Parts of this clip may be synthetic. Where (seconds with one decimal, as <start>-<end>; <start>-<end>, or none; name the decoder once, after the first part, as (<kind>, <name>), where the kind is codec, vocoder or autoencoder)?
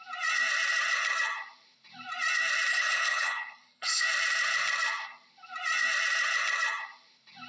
2.7-4.0 (codec, HILCodec)